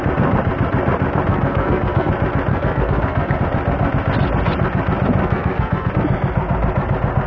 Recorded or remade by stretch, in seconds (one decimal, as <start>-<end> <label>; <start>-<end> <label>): 0.0-1.3 recorded; 1.3-2.1 remade; 2.1-2.5 recorded; 2.5-3.4 remade; 3.4-5.2 recorded; 5.2-5.9 remade; 5.9-7.3 recorded